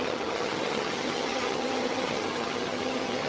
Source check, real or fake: fake